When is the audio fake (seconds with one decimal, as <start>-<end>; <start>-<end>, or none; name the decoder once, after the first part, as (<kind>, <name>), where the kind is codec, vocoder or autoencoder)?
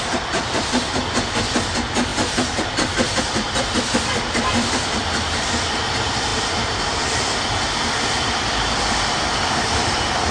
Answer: 0.0-2.1 (vocoder, BigVGAN v2); 3.2-10.3